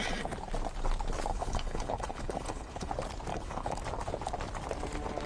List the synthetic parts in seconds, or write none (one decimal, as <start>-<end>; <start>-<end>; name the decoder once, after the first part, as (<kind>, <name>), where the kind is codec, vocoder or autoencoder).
1.3-2.9 (codec, HILCodec); 3.3-3.8